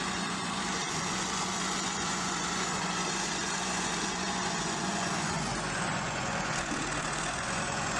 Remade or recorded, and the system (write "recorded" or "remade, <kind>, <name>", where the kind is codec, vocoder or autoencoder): remade, vocoder, Vocos